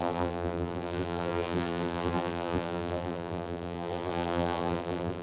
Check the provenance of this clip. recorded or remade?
remade